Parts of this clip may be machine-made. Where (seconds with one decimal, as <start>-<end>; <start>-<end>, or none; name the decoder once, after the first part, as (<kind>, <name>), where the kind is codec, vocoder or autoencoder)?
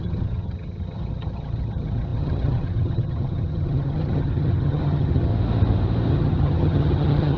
0.0-5.3 (vocoder, HiFi-GAN); 6.1-7.4